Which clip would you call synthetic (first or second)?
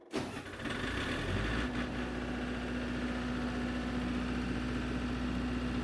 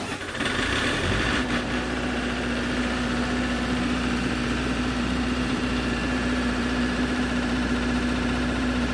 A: second